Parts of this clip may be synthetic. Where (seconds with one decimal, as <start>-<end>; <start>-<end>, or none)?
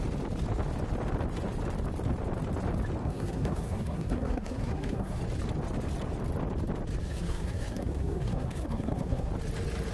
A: 3.0-5.2; 7.0-9.3